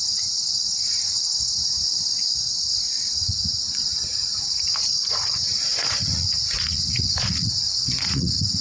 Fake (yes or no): yes